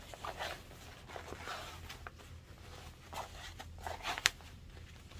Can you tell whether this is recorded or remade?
recorded